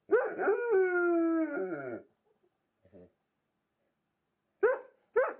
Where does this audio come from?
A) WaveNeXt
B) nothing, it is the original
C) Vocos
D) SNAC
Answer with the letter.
B